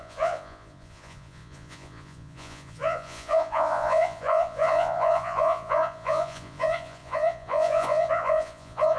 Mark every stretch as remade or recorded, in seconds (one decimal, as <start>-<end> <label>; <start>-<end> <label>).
0.0-9.0 remade